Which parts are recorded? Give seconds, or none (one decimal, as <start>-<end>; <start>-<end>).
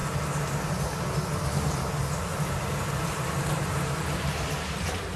0.0-2.3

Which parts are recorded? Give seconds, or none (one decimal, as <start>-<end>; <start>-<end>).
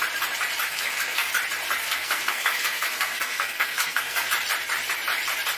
0.0-0.7; 1.3-1.8; 4.3-5.6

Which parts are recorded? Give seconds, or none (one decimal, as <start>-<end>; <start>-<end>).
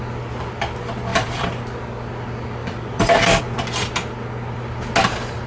0.0-1.1; 1.6-2.6; 3.4-5.5